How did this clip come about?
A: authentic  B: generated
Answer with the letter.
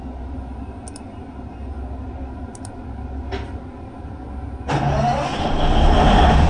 A